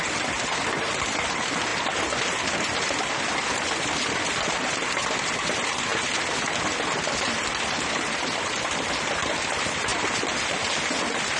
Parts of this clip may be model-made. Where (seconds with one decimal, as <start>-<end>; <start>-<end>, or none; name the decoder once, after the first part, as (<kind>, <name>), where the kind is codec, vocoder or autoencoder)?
0.0-1.7 (vocoder, BigVGAN v2); 3.9-5.9; 8.0-9.9; 11.0-11.4